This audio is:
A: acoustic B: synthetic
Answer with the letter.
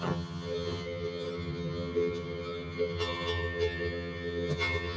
B